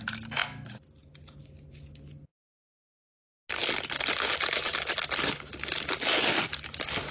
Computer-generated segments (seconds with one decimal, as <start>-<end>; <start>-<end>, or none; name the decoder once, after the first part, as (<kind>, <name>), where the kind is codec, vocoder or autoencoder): none